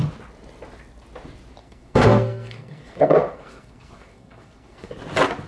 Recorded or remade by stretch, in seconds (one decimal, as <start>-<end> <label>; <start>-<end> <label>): 0.0-1.6 recorded; 1.6-4.9 remade; 4.9-5.5 recorded